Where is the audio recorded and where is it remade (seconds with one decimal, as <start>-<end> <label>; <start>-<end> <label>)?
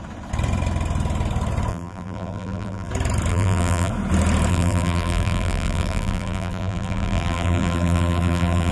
0.0-1.7 recorded; 1.7-2.9 remade; 2.9-3.3 recorded; 3.3-3.9 remade; 3.9-4.5 recorded; 4.5-8.7 remade